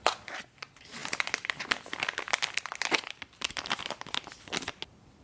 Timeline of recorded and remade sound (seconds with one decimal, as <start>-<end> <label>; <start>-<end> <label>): 0.0-5.2 recorded